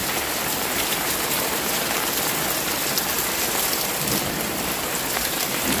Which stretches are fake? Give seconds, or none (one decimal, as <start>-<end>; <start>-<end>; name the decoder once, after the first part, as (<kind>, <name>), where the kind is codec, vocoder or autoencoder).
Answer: none